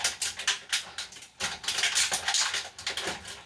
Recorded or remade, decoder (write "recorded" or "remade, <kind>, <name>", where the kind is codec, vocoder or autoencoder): recorded